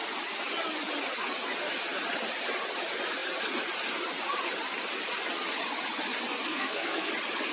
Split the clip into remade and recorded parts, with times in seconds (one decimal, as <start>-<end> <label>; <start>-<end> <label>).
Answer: 0.0-6.5 recorded; 6.5-7.1 remade; 7.1-7.5 recorded